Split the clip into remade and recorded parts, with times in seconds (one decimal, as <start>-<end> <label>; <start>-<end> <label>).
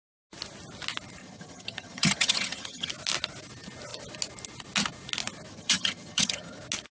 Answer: 0.0-1.2 recorded; 1.2-2.9 remade; 2.9-5.5 recorded; 5.5-6.6 remade; 6.6-7.0 recorded